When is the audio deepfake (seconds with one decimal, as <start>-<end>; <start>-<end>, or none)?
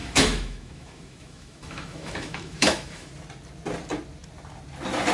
0.0-3.1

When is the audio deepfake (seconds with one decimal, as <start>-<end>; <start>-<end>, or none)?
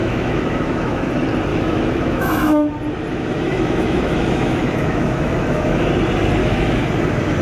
0.0-1.1; 1.5-2.7; 3.1-5.9; 6.4-6.9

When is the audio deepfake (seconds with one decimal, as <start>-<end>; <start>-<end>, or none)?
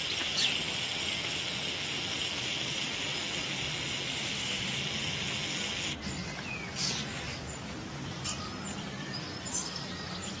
4.1-4.8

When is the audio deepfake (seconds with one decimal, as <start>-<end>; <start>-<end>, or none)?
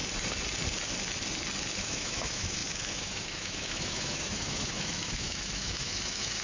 1.8-6.4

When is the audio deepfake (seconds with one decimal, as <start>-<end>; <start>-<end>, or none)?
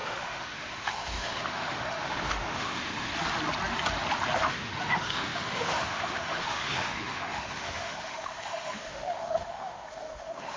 0.0-3.1; 4.5-10.6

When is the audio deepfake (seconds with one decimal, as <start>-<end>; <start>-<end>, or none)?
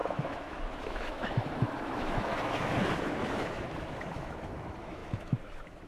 0.0-5.9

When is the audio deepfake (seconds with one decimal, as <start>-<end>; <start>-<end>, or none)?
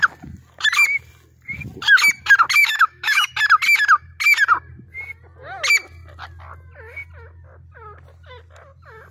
2.6-3.3